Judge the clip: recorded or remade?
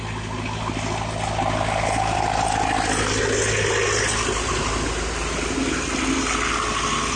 recorded